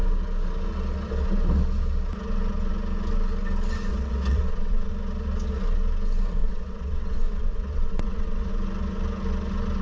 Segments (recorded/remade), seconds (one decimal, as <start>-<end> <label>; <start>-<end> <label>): 0.0-3.9 recorded; 3.9-4.9 remade; 4.9-6.4 recorded; 6.4-8.5 remade; 8.5-9.8 recorded